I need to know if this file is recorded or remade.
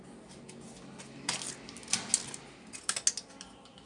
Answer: recorded